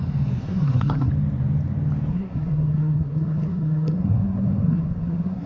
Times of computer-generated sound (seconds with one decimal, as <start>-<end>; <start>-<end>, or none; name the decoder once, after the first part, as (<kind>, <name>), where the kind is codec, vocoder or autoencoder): 0.4-1.1 (codec, SNAC); 2.1-5.5